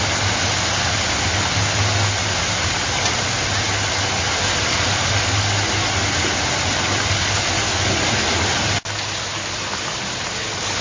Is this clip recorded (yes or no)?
yes